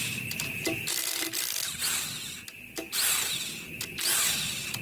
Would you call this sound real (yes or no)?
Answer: yes